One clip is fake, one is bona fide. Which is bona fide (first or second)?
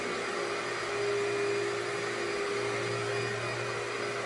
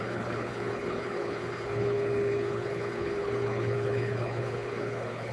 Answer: first